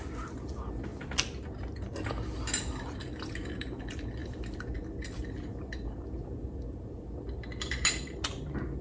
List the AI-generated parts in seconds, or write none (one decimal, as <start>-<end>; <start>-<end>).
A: none